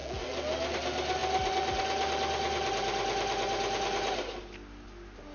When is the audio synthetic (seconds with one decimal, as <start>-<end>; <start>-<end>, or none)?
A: none

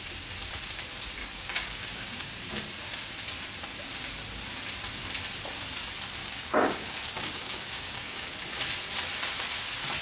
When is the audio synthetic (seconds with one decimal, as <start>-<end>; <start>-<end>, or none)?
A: 1.2-2.3; 6.2-8.3